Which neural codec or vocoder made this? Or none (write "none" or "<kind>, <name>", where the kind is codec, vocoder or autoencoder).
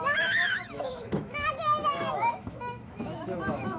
autoencoder, DAC-VAE